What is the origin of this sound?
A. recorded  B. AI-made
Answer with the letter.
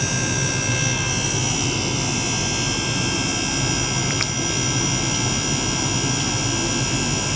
A